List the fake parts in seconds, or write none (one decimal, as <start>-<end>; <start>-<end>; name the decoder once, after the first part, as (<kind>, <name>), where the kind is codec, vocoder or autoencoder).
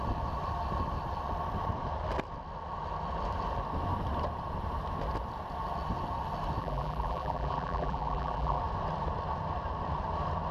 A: 6.6-8.6 (vocoder, BigVGAN v2)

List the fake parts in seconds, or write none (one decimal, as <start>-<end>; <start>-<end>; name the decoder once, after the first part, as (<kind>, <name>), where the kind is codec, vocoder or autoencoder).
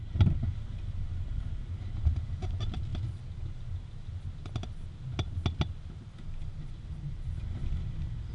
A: 0.0-2.9 (vocoder, BigVGAN v2); 6.6-8.3